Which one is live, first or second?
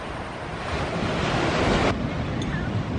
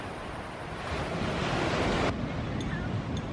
second